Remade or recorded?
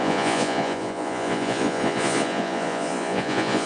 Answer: remade